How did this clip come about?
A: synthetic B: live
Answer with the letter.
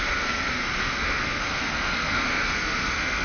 A